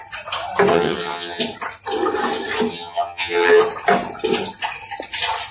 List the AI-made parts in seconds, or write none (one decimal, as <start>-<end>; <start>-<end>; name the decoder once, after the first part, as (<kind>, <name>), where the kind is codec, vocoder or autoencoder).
0.7-1.4 (vocoder, HiFi-GAN); 2.7-3.6